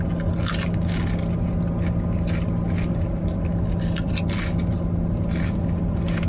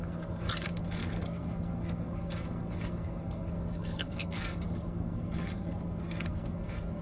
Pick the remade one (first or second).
second